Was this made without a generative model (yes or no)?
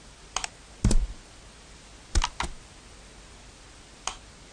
yes